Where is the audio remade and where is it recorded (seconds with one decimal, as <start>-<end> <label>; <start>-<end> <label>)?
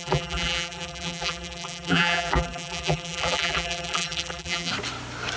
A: 0.0-4.7 remade; 4.7-5.4 recorded